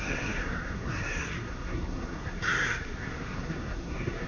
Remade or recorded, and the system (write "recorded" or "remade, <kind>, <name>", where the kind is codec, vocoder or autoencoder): remade, codec, SNAC